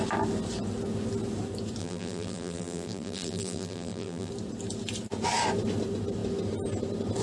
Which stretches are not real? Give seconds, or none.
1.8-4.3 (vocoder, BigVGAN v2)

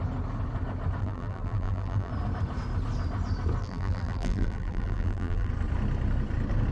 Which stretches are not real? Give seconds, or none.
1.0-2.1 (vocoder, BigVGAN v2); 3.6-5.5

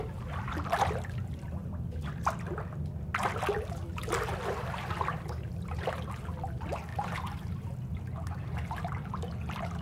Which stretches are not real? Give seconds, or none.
none

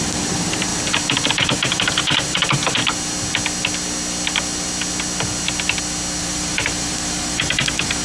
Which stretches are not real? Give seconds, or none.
0.0-0.7 (vocoder, BigVGAN v2); 1.3-2.8; 6.2-8.0